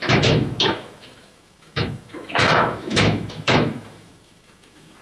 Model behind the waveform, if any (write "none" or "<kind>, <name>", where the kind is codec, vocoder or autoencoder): autoencoder, DAC-VAE